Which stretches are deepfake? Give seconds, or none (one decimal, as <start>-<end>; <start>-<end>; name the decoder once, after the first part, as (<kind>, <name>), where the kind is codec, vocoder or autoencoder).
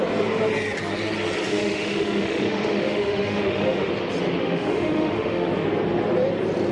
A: 1.5-3.9 (autoencoder, DAC-VAE); 4.4-5.5